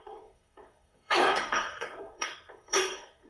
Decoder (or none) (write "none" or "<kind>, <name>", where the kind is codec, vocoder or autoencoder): codec, SNAC